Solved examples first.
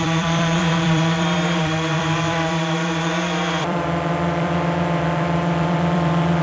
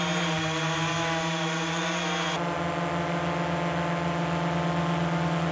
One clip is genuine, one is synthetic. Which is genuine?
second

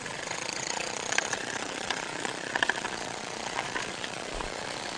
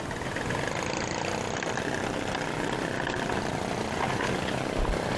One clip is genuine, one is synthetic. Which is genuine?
second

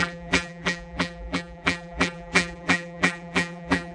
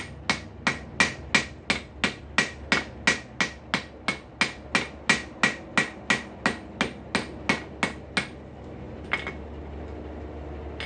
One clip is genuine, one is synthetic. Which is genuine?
second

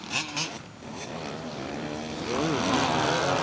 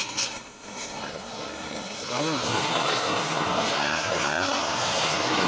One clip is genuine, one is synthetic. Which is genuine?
first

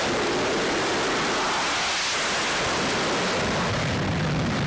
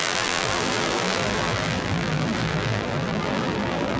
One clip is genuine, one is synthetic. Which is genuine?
first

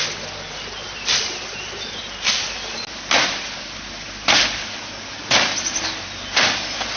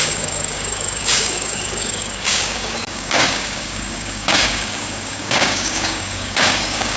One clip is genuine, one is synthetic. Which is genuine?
first